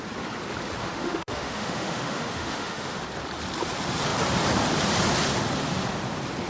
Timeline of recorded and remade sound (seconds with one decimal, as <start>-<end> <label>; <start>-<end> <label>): 0.0-0.8 recorded; 0.8-3.0 remade; 3.0-6.5 recorded